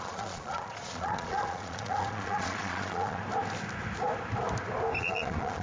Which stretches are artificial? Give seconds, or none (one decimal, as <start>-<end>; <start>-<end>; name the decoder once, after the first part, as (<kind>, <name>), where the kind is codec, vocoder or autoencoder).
0.0-3.2 (vocoder, Vocos); 5.0-5.6

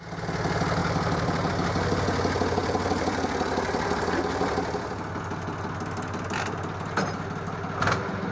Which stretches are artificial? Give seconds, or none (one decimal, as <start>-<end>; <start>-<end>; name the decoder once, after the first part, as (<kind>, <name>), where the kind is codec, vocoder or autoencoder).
0.8-1.5 (vocoder, BigVGAN v2); 2.6-5.2

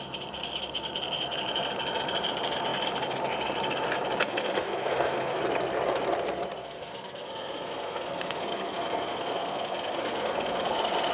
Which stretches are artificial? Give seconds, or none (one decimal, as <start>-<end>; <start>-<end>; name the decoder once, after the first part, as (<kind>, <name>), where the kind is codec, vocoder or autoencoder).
4.2-5.4 (codec, SNAC); 6.6-11.1